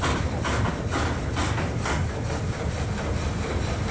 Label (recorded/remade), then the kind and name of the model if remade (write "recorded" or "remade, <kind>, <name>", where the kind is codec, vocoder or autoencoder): recorded